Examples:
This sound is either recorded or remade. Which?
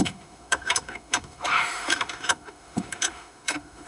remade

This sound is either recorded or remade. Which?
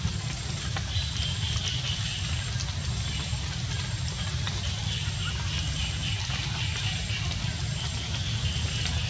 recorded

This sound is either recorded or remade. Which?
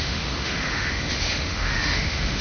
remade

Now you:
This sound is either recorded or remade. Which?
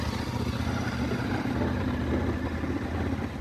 recorded